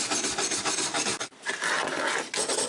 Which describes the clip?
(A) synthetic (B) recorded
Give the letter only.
B